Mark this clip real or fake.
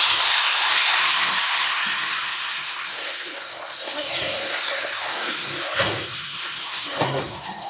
fake